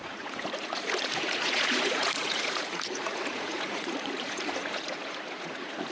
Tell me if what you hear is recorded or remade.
remade